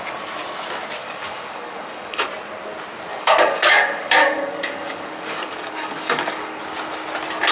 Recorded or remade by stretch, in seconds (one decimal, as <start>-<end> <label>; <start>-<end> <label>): 0.0-1.0 recorded; 1.0-2.3 remade; 2.3-3.1 recorded; 3.1-6.6 remade; 6.6-7.5 recorded